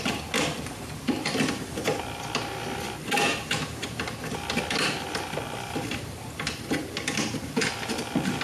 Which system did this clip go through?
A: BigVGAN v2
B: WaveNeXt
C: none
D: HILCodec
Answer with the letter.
C